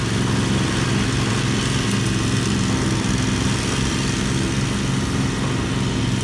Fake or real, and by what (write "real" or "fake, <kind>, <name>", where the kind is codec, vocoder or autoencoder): real